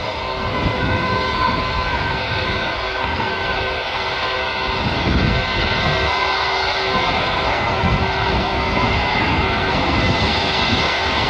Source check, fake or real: fake